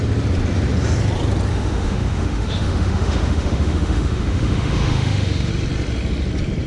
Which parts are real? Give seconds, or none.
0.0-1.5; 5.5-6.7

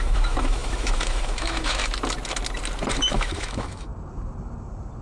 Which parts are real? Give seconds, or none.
1.8-2.9; 3.9-5.0

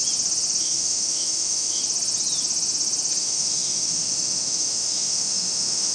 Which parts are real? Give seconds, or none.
0.0-0.6; 1.8-3.2

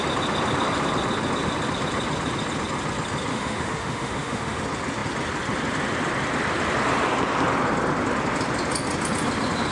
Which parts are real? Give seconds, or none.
0.0-3.3; 4.6-9.7